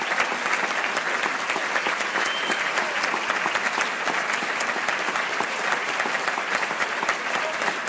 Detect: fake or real fake